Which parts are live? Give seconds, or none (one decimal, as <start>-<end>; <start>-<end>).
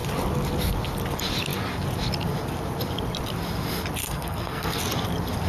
0.0-4.0; 4.8-5.5